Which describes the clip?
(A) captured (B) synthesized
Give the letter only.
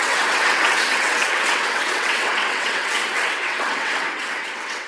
B